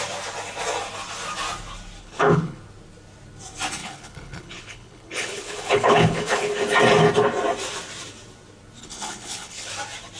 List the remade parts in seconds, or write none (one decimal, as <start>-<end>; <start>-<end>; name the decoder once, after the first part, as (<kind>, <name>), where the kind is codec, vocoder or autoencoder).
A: 2.0-2.6 (codec, HILCodec); 3.8-6.5; 8.8-9.7